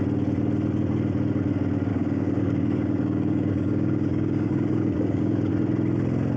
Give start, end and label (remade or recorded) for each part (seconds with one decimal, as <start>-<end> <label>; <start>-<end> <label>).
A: 0.0-1.9 recorded; 1.9-5.5 remade; 5.5-6.4 recorded